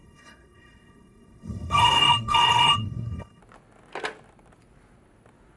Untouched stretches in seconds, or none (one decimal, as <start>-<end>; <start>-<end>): 3.4-5.6

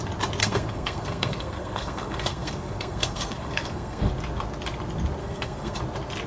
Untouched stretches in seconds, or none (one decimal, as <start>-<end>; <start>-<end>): 0.0-0.4; 4.1-5.2; 5.8-6.3

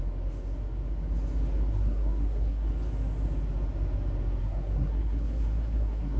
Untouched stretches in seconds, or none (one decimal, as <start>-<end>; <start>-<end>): 0.0-1.7; 2.7-4.4